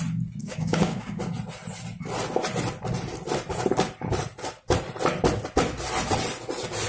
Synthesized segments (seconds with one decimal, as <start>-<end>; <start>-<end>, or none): 0.4-1.2